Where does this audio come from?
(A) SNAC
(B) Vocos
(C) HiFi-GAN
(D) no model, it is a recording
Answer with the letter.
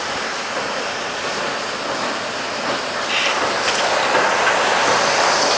D